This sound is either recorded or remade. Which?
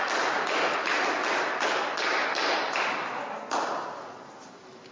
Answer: recorded